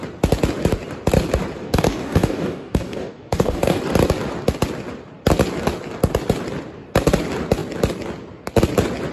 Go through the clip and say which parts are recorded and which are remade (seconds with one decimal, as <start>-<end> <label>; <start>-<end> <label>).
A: 0.0-1.6 recorded; 1.6-3.8 remade; 3.8-9.1 recorded